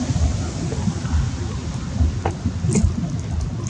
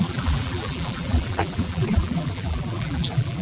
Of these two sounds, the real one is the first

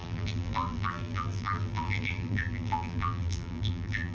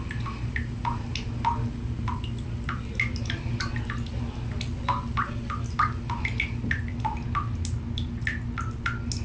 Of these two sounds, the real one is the second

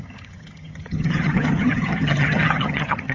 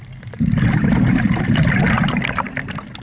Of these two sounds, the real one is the second